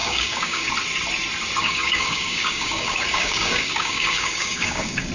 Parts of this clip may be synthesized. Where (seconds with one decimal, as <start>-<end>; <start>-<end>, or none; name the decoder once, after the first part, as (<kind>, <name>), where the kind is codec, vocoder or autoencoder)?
0.0-0.7 (codec, DAC); 1.6-5.1

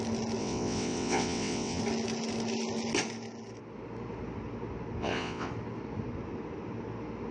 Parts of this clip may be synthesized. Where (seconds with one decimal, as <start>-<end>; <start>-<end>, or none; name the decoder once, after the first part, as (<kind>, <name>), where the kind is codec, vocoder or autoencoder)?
0.4-1.8 (vocoder, WaveNeXt); 5.0-5.5

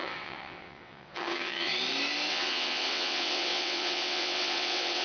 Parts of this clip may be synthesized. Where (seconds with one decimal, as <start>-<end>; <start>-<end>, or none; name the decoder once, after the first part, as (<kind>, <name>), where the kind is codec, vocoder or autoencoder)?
0.0-1.7 (vocoder, WaveNeXt); 2.3-5.0

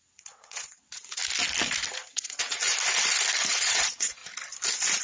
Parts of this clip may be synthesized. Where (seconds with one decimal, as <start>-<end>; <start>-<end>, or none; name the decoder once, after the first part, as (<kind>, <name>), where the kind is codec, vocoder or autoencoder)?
0.0-1.2 (vocoder, WaveNeXt); 2.1-2.6; 3.5-4.2